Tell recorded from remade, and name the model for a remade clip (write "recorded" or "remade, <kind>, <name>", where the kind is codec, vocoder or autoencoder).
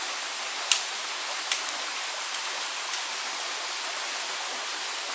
recorded